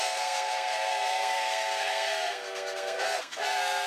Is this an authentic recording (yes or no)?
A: no